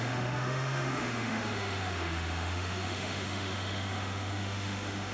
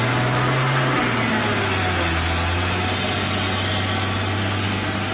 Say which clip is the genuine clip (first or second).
second